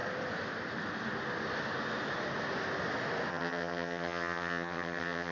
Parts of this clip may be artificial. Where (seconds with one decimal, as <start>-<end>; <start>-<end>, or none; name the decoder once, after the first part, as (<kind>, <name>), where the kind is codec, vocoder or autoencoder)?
3.3-5.3 (vocoder, HiFi-GAN)